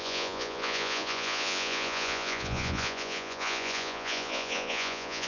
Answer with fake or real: fake